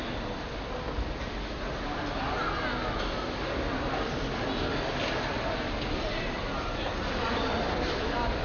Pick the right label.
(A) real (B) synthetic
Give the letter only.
A